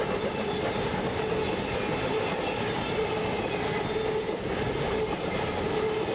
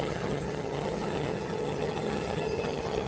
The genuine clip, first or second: first